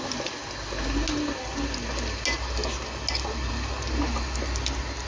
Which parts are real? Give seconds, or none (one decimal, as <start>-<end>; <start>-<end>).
0.0-5.1